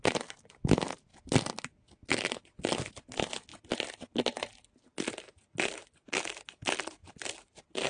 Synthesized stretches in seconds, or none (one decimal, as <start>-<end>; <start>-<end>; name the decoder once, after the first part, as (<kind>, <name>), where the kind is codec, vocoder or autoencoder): none